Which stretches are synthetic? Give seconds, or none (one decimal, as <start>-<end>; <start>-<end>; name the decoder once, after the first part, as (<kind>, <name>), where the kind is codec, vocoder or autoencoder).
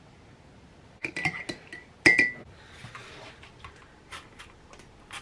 none